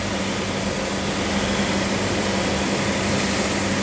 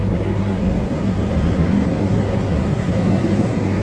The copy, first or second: second